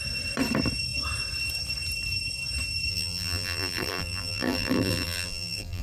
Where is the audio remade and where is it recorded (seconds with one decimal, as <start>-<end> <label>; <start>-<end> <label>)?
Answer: 0.0-2.9 recorded; 2.9-5.8 remade